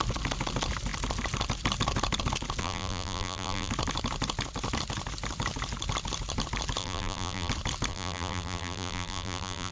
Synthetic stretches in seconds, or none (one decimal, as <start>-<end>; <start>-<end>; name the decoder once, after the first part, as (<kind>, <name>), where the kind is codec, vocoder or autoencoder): 2.6-3.7 (vocoder, BigVGAN v2); 6.8-7.5; 7.9-9.7